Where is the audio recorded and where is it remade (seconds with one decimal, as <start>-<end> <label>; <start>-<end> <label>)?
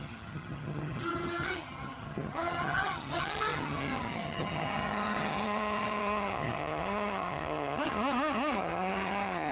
0.0-9.5 remade